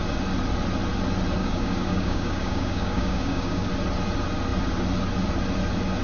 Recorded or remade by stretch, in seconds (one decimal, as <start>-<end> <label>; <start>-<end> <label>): 0.0-1.4 recorded; 1.4-3.7 remade; 3.7-6.0 recorded

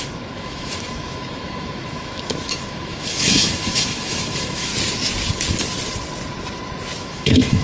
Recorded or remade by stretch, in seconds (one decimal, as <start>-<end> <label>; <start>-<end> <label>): 0.0-4.7 remade; 4.7-7.0 recorded; 7.0-7.6 remade

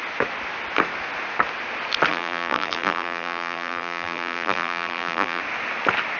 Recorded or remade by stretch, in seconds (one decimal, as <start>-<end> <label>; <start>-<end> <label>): 0.0-2.1 recorded; 2.1-5.4 remade; 5.4-6.2 recorded

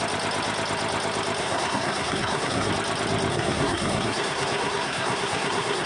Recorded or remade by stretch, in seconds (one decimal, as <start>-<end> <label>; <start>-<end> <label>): 0.0-1.4 recorded; 1.4-2.7 remade; 2.7-3.3 recorded; 3.3-5.9 remade